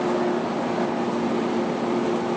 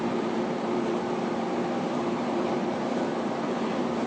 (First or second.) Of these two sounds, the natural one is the first